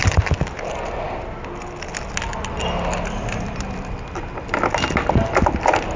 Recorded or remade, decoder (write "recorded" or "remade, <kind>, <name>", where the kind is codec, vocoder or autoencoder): recorded